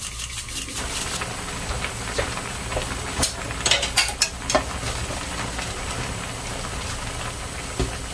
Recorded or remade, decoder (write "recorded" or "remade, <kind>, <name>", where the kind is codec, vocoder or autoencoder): recorded